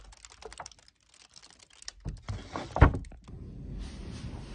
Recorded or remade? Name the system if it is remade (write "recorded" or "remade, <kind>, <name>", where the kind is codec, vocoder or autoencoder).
recorded